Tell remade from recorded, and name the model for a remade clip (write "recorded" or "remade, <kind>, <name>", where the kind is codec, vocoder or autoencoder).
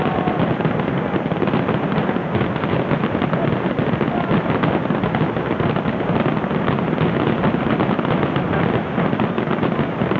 recorded